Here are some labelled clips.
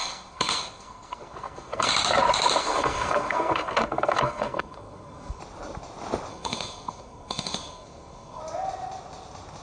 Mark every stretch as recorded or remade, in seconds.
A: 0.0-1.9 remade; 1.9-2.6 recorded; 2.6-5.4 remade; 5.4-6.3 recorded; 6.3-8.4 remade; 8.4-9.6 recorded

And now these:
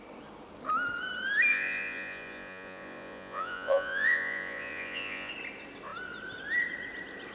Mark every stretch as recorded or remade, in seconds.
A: 0.0-1.5 recorded; 1.5-5.3 remade; 5.3-7.3 recorded

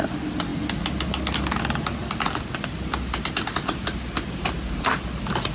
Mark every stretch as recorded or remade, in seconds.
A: 0.0-5.5 recorded

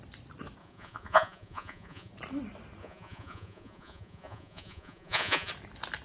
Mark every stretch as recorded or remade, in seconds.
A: 0.0-0.6 recorded; 0.6-2.1 remade; 2.1-2.8 recorded; 2.8-5.5 remade; 5.5-6.0 recorded